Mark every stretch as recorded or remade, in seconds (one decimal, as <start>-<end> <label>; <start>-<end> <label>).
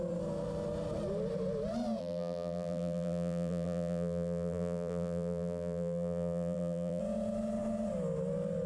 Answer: 0.0-2.0 recorded; 2.0-7.0 remade; 7.0-8.7 recorded